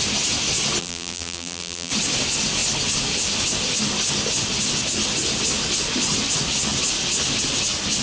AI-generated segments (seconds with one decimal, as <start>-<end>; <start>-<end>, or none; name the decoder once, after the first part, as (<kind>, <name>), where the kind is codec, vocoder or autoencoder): 0.8-1.9 (vocoder, BigVGAN v2)